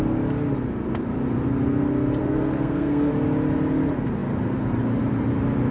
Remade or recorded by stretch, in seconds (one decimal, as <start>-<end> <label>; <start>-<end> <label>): 0.0-2.2 recorded; 2.2-3.1 remade; 3.1-5.7 recorded